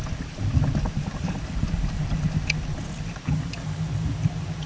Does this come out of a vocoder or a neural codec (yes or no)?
no